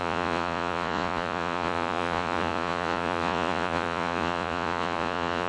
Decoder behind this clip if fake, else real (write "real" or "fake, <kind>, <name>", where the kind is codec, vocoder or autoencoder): fake, vocoder, Vocos